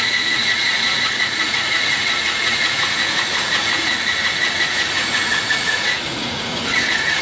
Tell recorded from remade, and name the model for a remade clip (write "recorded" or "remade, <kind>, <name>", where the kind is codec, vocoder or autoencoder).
remade, vocoder, Vocos